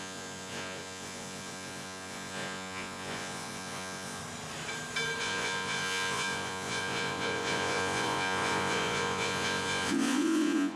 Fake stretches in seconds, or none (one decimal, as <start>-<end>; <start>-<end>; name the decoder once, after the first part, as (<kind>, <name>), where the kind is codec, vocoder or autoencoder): 0.0-4.2 (vocoder, Vocos); 5.2-10.8